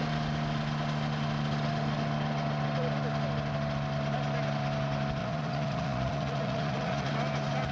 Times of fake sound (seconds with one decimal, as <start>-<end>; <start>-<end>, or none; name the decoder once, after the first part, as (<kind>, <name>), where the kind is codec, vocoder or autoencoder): 5.2-7.1 (vocoder, Vocos)